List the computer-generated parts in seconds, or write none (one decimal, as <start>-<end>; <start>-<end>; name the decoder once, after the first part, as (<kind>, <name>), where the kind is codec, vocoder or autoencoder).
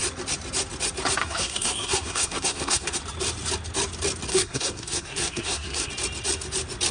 1.2-3.0 (codec, SNAC); 4.3-5.9